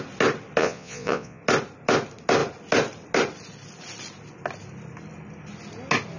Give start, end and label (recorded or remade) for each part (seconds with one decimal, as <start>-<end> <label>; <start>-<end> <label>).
0.0-0.6 recorded; 0.6-1.4 remade; 1.4-6.2 recorded